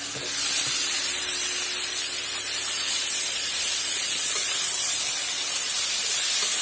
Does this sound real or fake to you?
real